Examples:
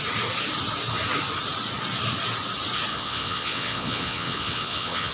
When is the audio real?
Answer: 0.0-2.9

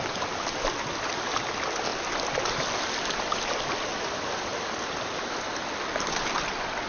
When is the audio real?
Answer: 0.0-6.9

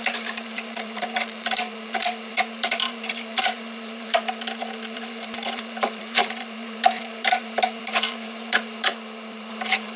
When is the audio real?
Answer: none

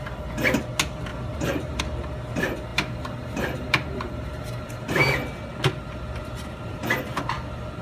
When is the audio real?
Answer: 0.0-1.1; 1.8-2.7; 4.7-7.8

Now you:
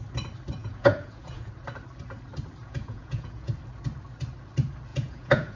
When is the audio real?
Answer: 0.0-0.6; 1.5-2.6; 3.5-4.9